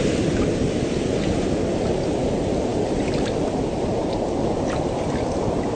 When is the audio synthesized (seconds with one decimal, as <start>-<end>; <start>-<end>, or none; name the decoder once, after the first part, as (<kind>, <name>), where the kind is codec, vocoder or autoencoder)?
none